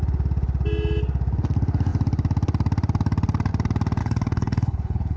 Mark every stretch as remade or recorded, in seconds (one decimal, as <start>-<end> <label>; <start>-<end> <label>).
0.0-4.0 recorded; 4.0-5.2 remade